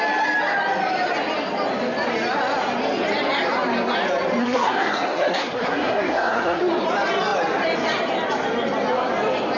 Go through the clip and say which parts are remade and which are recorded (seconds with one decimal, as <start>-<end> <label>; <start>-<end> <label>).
0.0-4.4 recorded; 4.4-6.6 remade; 6.6-9.6 recorded